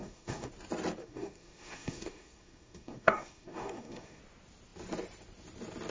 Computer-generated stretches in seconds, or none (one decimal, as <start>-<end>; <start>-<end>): 0.0-0.5; 1.0-4.2